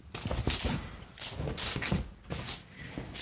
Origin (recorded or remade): recorded